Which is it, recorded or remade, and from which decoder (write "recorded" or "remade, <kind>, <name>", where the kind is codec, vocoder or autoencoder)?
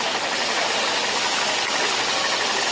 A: recorded